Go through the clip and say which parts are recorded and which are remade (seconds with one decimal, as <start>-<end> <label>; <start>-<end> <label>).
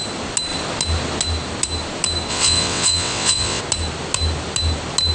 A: 0.0-2.3 recorded; 2.3-3.6 remade; 3.6-5.1 recorded